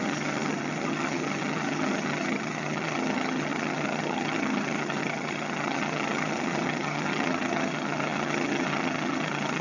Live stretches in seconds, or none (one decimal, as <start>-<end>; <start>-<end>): none